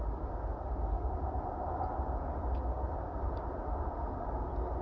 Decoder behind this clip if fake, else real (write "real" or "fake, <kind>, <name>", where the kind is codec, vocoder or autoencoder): real